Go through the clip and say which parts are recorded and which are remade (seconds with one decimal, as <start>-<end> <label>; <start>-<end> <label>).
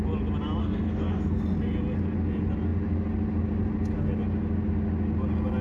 0.0-0.6 recorded; 0.6-1.4 remade; 1.4-5.6 recorded